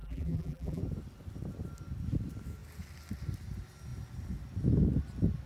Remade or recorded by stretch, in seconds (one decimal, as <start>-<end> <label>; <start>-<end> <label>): 0.0-0.8 remade; 0.8-5.5 recorded